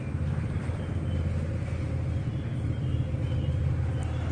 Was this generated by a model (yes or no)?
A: no